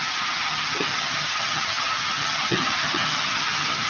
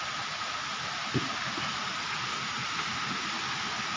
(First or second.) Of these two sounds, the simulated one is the first